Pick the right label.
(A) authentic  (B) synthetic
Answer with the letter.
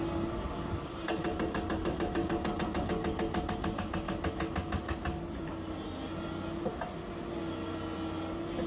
A